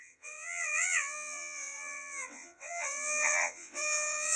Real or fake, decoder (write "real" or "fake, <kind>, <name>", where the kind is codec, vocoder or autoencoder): fake, vocoder, WaveNeXt